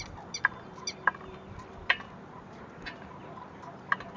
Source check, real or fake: real